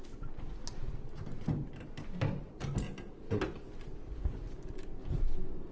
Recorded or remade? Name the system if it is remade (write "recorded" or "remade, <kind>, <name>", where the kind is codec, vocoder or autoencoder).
recorded